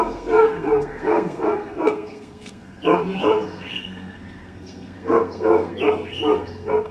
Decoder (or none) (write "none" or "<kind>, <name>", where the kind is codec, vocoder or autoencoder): codec, SNAC